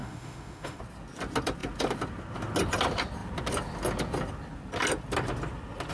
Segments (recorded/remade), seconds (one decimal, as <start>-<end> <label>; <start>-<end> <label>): 0.0-0.8 remade; 0.8-5.9 recorded